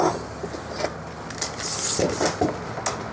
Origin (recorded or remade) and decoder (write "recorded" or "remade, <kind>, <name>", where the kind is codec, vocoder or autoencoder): recorded